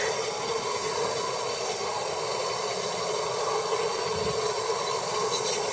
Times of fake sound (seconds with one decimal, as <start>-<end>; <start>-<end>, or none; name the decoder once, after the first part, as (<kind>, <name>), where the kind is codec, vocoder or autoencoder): none